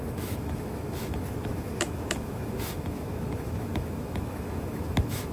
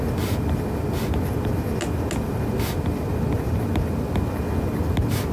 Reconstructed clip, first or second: first